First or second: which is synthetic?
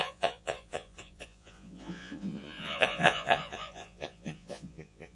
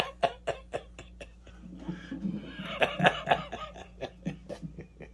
first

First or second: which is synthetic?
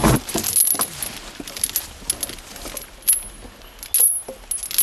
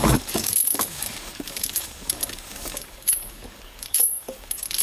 second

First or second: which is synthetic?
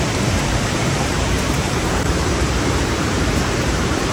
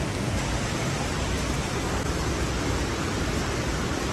first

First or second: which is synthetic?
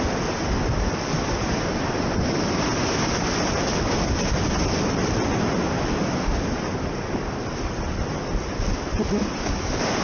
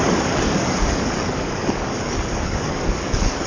second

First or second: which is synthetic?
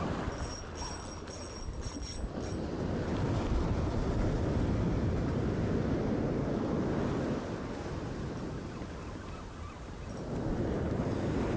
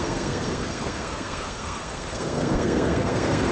second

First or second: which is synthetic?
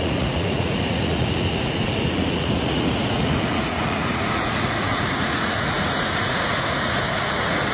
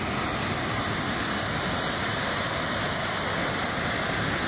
first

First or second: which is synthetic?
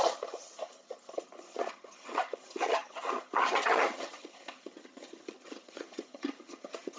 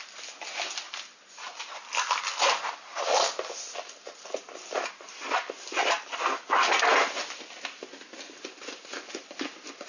first